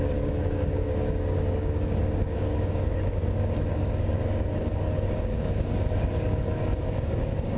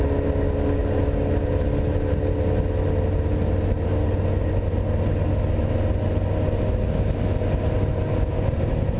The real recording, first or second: second